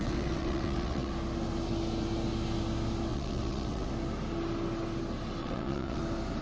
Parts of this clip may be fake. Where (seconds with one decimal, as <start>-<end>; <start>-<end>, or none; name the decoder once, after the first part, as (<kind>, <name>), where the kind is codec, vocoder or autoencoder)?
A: 0.0-1.1 (vocoder, WaveNeXt); 3.1-3.9; 5.4-6.0